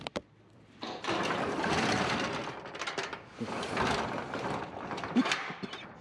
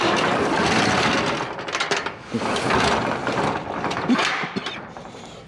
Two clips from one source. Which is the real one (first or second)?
second